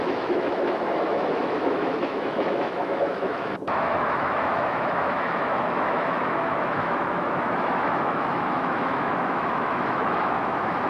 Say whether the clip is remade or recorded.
remade